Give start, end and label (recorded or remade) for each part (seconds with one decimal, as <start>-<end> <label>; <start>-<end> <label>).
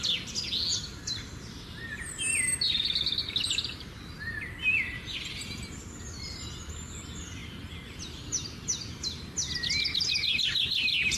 0.0-7.4 recorded; 7.4-8.0 remade; 8.0-11.2 recorded